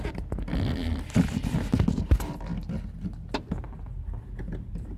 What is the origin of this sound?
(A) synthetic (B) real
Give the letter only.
B